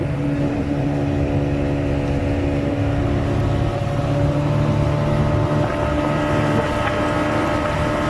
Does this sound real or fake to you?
real